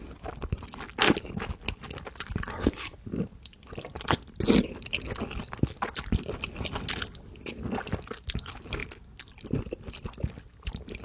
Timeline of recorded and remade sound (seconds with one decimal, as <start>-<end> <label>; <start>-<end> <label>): 0.0-11.0 recorded